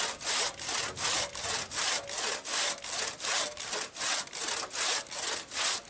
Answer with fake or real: real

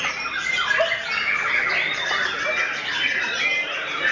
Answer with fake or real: real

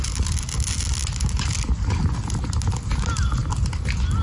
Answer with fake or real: real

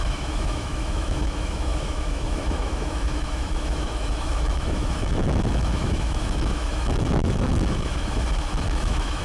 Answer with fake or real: fake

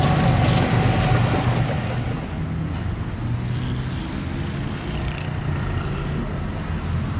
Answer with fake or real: real